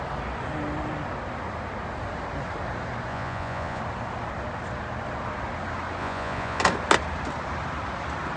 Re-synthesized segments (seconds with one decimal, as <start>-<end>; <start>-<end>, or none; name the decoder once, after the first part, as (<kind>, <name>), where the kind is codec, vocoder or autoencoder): 3.1-3.8 (vocoder, Vocos); 6.0-6.6